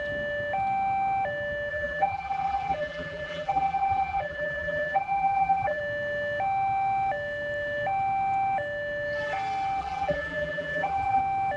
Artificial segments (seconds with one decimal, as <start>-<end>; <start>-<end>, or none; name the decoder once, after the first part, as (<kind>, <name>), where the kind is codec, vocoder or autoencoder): 1.7-5.8 (vocoder, BigVGAN v2); 9.8-11.2